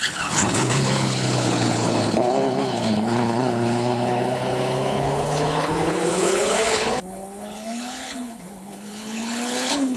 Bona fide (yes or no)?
no